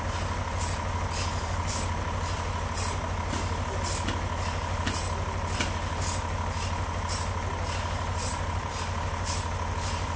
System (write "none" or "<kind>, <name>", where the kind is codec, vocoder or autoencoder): none